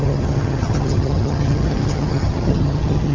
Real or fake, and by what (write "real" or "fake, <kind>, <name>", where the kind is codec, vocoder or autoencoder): fake, vocoder, HiFi-GAN